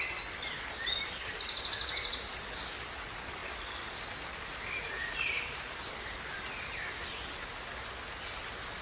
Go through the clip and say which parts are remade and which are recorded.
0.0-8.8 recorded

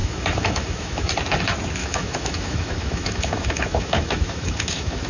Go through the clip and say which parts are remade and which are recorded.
0.0-1.1 remade; 1.1-1.8 recorded; 1.8-5.1 remade

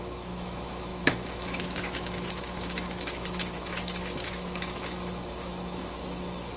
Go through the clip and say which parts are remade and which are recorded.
0.0-6.6 remade

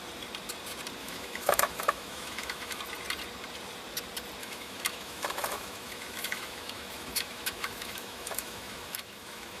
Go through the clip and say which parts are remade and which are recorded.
0.0-1.0 recorded; 1.0-2.8 remade; 2.8-4.4 recorded; 4.4-9.6 remade

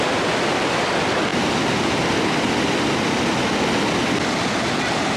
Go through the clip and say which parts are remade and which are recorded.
0.0-5.2 recorded

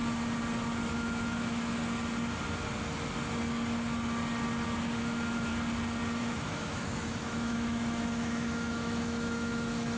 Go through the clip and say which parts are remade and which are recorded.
0.0-0.9 recorded; 0.9-1.8 remade; 1.8-5.0 recorded; 5.0-5.5 remade; 5.5-6.2 recorded; 6.2-10.0 remade

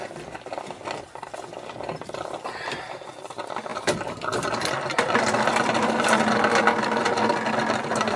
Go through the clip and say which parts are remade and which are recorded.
0.0-8.2 recorded

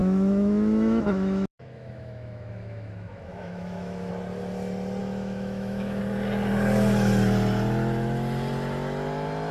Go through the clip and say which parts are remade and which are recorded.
0.0-4.1 remade; 4.1-5.0 recorded; 5.0-6.0 remade; 6.0-9.5 recorded